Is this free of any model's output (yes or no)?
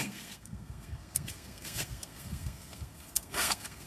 no